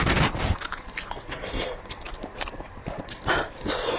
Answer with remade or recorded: remade